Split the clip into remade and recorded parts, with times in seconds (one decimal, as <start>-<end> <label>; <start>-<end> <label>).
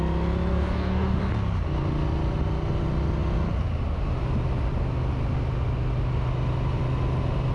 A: 0.0-0.5 recorded; 0.5-1.2 remade; 1.2-7.5 recorded